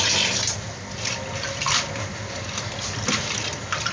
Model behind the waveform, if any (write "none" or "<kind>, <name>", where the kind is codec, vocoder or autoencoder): none